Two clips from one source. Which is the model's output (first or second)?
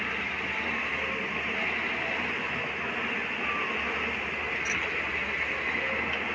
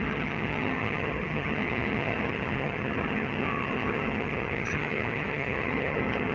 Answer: second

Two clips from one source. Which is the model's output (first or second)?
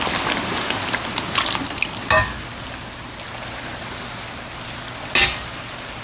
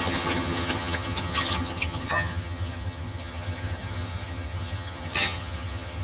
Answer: second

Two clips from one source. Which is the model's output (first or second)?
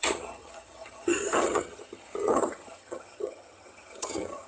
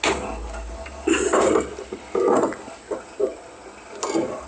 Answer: first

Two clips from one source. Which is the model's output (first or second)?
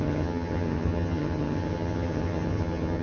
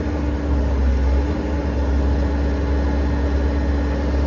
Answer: first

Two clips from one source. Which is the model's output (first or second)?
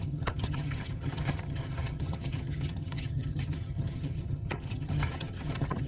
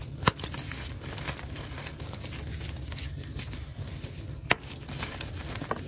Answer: first